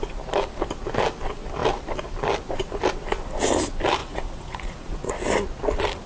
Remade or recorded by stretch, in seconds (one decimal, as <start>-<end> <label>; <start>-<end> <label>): 0.0-4.0 recorded; 4.0-5.1 remade; 5.1-6.1 recorded